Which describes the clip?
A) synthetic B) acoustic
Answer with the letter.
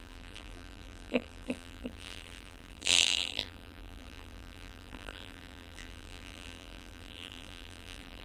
A